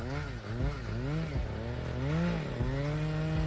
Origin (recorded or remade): recorded